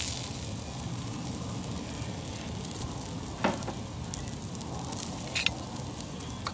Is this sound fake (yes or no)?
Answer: no